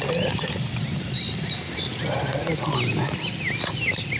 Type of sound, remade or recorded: recorded